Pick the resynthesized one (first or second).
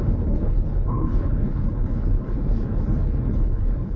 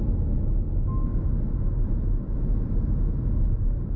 first